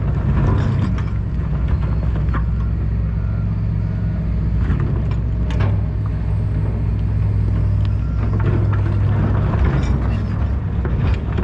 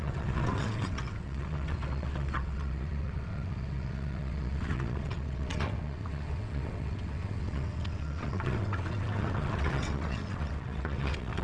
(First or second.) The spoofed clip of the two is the second